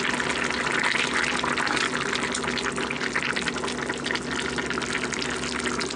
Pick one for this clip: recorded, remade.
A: recorded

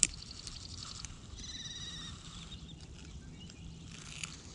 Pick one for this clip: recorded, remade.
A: remade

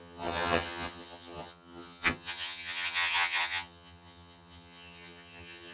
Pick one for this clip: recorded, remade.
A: remade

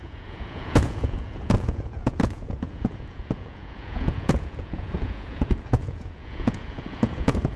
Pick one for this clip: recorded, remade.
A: remade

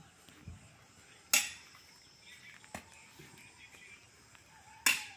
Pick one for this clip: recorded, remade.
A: recorded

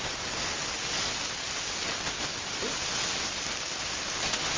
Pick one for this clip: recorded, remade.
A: recorded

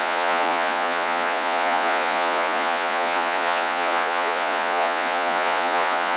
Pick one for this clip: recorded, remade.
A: remade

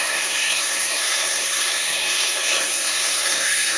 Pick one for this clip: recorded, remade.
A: remade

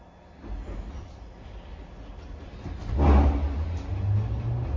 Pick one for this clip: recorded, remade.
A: recorded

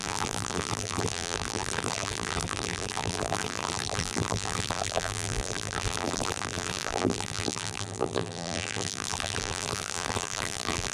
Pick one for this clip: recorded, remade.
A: remade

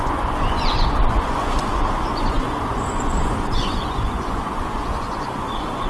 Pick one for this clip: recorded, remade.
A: remade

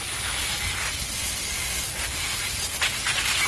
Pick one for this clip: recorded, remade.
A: recorded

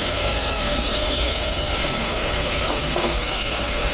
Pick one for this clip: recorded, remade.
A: remade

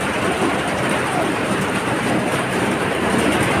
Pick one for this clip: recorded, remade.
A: remade